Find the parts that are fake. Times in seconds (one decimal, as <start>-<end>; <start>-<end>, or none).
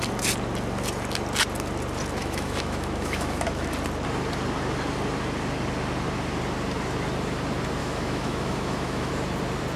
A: 2.2-3.7; 7.8-9.1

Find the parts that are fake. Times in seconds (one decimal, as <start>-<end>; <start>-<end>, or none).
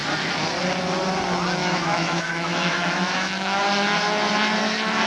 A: 1.6-3.6